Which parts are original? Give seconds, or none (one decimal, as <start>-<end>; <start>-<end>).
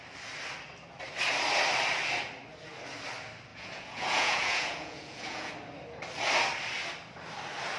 0.0-3.5; 5.5-7.8